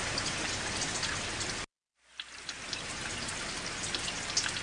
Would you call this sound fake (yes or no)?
no